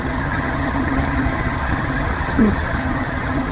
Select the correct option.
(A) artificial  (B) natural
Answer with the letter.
A